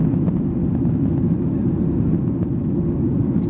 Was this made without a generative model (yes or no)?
yes